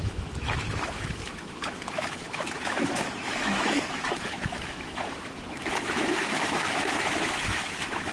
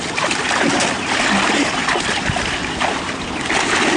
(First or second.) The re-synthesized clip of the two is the first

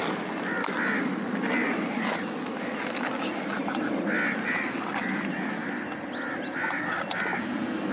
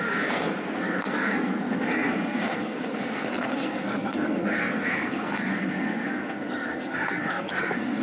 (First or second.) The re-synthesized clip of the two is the second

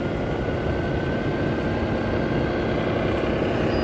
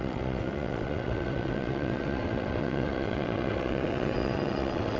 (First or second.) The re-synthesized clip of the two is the second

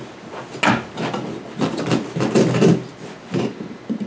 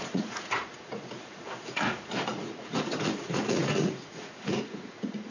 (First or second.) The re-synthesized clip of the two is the second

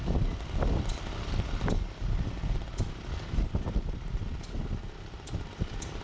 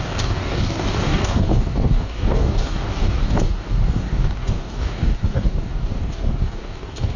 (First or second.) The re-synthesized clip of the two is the second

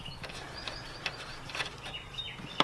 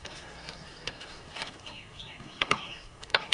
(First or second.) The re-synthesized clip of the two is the second